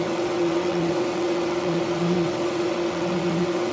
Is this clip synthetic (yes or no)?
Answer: yes